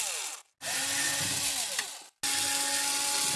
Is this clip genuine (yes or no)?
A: yes